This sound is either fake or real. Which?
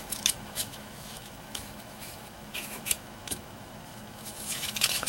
fake